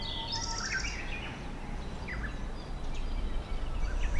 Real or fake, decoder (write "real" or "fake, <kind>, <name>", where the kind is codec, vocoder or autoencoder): real